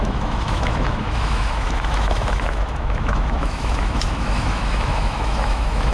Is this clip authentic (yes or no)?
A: no